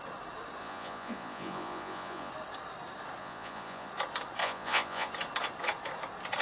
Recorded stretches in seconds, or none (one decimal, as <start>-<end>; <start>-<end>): 0.0-0.6; 2.3-3.2; 3.9-4.4; 5.1-6.4